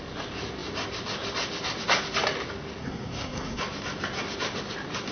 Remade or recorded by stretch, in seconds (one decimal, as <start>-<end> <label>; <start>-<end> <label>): 0.0-2.8 recorded; 2.8-3.6 remade; 3.6-5.1 recorded